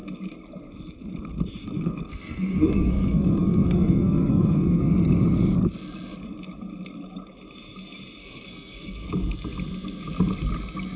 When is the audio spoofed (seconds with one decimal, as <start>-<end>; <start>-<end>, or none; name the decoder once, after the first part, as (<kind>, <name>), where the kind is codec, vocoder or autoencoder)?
1.6-4.9 (codec, SNAC); 8.2-9.1